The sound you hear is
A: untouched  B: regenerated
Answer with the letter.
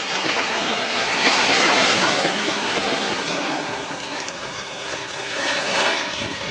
B